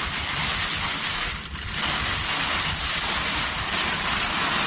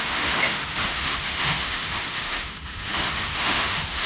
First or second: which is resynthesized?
second